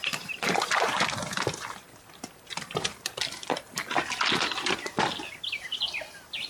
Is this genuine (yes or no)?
yes